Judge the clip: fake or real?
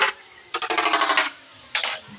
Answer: real